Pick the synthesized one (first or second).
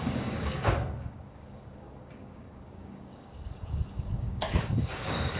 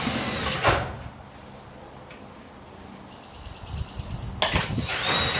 first